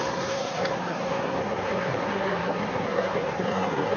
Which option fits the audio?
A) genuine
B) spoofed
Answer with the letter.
B